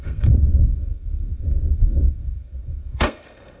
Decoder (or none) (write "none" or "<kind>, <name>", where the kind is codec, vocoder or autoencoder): codec, SNAC